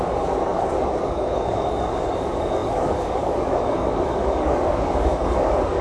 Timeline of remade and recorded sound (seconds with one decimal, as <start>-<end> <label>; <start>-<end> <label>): 0.0-5.8 remade